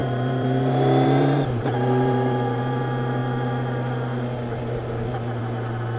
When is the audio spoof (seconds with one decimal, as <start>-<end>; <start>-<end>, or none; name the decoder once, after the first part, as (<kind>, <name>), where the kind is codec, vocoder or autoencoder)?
0.0-2.8 (vocoder, BigVGAN v2)